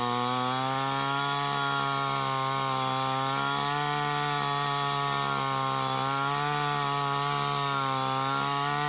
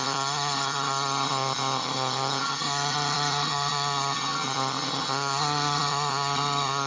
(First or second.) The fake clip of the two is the second